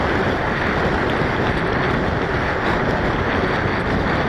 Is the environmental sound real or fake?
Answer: real